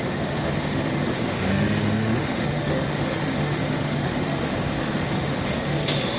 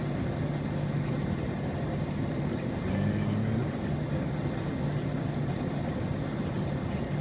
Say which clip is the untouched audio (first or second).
second